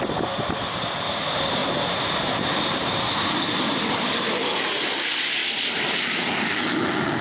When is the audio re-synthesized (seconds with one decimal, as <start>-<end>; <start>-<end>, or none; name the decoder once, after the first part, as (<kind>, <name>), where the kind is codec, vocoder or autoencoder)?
none